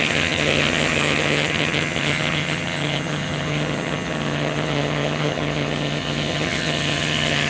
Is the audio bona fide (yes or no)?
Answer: no